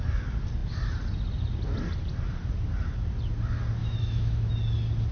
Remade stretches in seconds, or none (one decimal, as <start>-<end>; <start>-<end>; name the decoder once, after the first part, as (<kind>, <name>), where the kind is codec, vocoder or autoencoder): 3.8-4.5 (autoencoder, DAC-VAE)

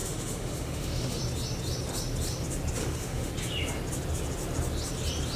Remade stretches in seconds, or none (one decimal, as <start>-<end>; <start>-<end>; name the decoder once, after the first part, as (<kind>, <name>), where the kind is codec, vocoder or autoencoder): 0.0-1.2 (autoencoder, DAC-VAE); 2.8-3.3